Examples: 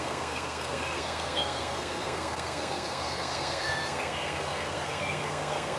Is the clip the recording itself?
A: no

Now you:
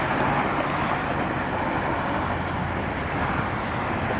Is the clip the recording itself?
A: yes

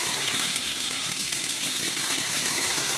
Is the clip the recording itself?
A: no